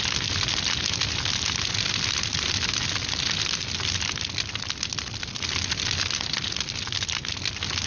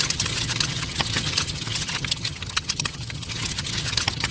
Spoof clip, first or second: second